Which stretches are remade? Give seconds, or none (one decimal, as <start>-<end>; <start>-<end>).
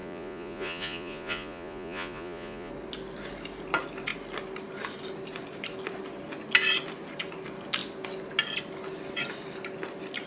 0.0-2.7